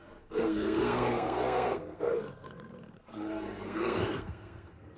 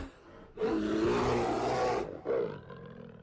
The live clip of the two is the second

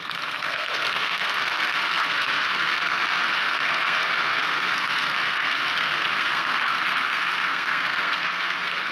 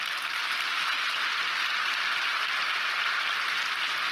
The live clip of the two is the second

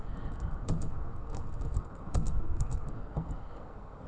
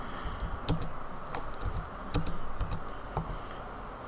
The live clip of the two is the second